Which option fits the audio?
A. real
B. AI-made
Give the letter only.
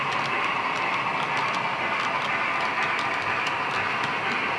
A